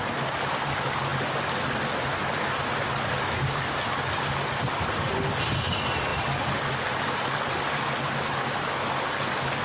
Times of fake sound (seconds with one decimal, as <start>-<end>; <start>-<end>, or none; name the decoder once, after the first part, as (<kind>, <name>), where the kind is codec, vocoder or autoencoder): none